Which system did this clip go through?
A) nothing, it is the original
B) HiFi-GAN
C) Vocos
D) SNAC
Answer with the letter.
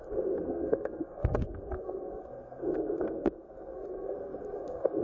D